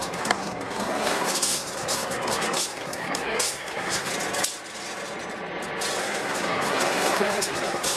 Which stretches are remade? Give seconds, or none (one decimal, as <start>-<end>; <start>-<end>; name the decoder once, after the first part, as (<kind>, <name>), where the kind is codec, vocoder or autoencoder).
0.0-4.1 (codec, SNAC); 6.0-8.0